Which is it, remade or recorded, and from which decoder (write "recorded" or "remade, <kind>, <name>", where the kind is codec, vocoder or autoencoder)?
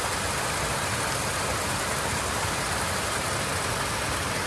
recorded